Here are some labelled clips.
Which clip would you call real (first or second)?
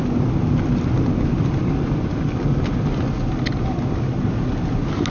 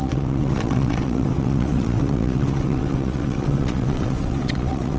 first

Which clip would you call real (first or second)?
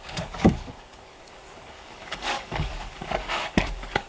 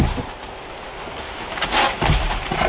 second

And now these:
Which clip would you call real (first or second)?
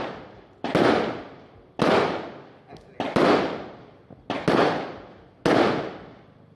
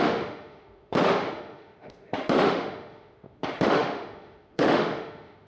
first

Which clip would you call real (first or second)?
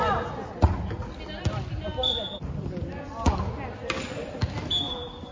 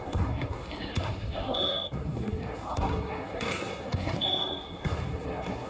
first